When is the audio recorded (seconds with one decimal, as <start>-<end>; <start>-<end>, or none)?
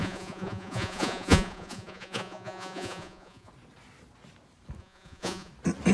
3.5-4.8; 5.5-5.9